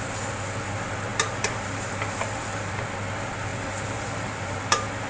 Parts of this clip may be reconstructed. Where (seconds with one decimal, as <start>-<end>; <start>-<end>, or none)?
1.1-2.8; 3.5-5.1